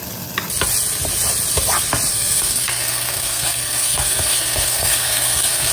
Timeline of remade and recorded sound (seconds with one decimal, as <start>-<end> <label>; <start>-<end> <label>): 0.0-2.1 recorded; 2.1-5.7 remade